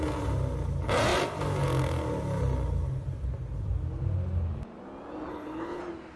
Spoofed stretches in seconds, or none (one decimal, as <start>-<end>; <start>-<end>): 5.3-5.8